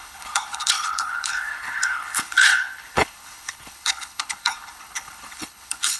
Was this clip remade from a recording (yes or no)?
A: yes